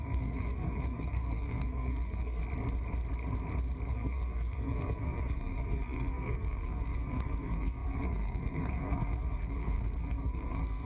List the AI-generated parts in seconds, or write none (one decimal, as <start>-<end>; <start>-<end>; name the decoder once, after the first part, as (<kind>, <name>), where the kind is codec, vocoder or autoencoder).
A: 0.0-2.4 (codec, SNAC); 3.9-10.8